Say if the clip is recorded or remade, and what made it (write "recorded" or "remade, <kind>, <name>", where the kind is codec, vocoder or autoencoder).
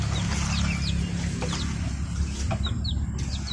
recorded